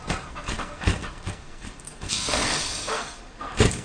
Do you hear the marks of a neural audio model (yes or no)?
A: yes